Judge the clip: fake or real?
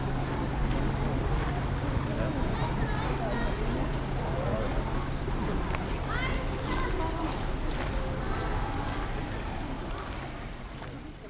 real